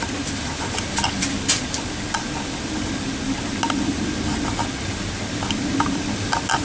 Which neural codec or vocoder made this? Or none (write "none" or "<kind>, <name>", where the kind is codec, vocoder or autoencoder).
none